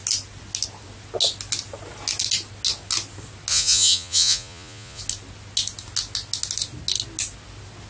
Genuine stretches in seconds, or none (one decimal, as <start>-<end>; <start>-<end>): 0.0-3.5; 5.0-7.9